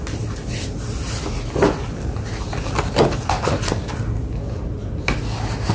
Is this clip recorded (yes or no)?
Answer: yes